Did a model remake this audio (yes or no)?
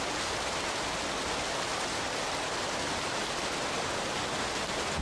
no